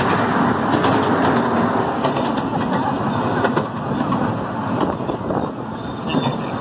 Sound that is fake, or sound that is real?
real